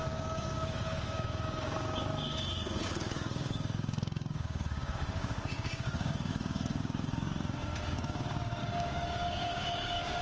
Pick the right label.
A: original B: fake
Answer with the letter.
B